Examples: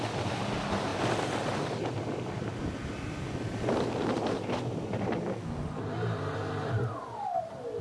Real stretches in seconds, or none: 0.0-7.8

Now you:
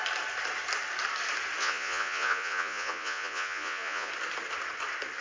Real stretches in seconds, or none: 0.0-1.6; 4.1-5.2

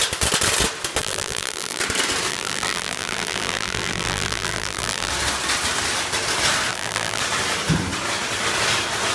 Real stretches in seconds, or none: 0.0-1.0; 1.8-2.3; 5.1-6.7; 7.2-9.1

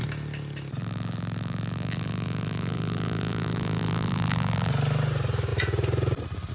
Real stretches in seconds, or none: 0.0-0.8; 4.7-6.5

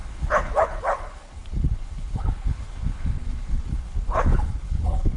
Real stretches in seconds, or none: none

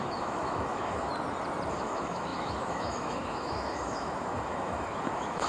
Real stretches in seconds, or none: 1.1-1.7